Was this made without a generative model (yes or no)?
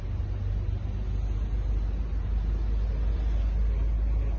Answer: yes